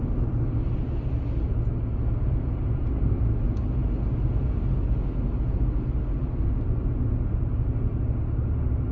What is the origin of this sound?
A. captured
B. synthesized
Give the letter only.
A